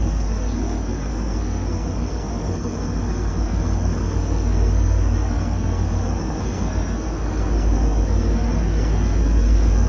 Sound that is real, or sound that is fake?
fake